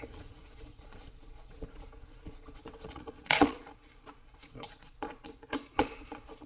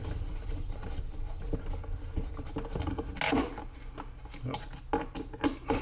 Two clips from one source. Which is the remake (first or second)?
first